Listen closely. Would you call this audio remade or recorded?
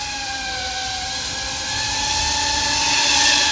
remade